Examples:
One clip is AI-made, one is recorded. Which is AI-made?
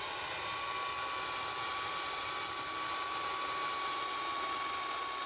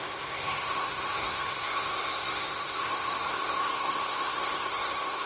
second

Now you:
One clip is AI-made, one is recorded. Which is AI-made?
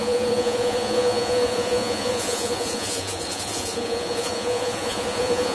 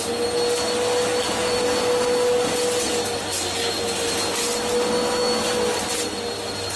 first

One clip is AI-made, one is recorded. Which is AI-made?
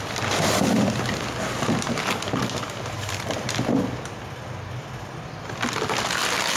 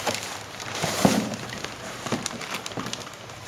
second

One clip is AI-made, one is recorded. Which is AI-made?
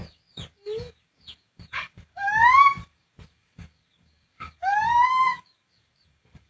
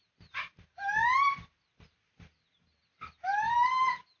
first